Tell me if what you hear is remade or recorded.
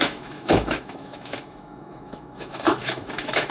remade